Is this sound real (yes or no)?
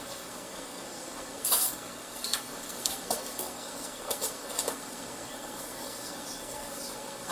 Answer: no